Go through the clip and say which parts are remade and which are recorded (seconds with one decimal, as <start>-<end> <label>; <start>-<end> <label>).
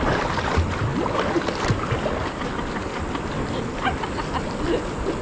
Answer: 0.0-5.2 recorded